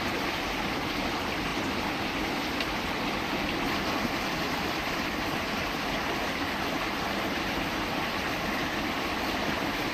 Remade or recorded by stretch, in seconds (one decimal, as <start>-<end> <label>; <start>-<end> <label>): 0.0-9.9 recorded